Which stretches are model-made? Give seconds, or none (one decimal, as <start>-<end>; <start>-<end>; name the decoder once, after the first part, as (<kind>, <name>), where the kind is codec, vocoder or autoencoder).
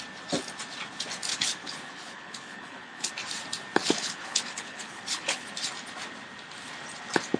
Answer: 1.3-3.1 (codec, HILCodec); 3.8-5.5